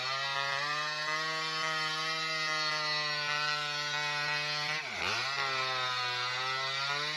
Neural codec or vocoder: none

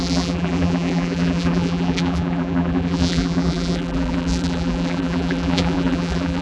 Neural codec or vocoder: vocoder, BigVGAN v2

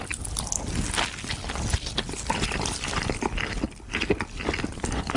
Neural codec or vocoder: none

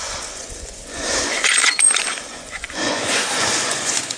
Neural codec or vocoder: vocoder, Vocos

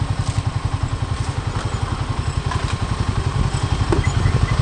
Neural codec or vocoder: none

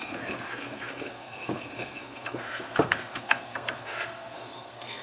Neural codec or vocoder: codec, SNAC